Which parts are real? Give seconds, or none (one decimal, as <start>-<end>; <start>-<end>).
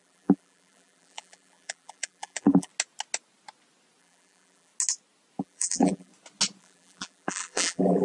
2.7-4.0; 4.7-5.4; 6.1-6.6